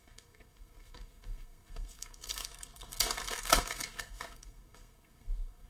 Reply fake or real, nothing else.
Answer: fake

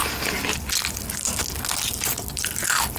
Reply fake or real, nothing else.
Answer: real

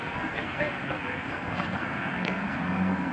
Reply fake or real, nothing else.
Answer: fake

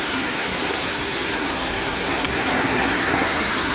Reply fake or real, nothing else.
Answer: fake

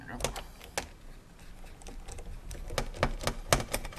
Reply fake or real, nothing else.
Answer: real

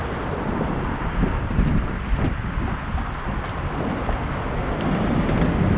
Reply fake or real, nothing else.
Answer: real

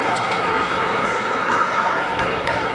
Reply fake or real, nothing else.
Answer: fake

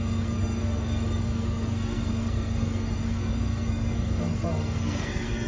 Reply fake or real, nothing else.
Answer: fake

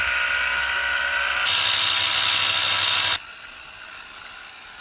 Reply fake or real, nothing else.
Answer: real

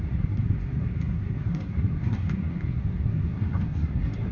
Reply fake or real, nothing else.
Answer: fake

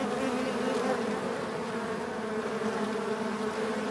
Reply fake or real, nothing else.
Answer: real